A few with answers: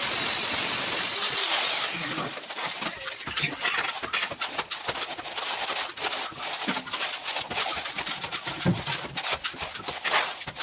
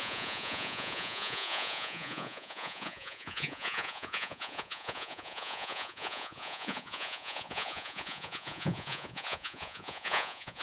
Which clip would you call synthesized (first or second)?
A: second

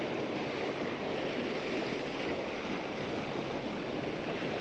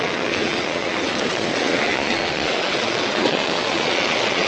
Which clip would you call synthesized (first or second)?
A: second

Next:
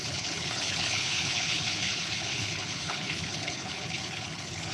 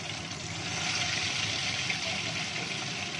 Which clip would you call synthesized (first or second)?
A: first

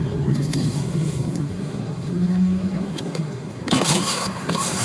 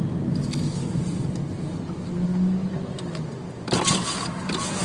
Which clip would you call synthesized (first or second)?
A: first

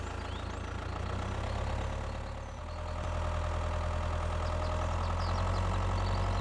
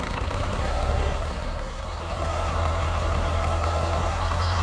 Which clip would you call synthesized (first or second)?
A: second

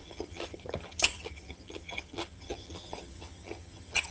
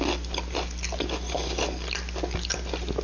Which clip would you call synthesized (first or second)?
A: first